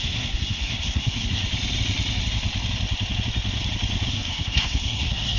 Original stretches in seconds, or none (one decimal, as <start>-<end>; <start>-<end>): 1.4-4.1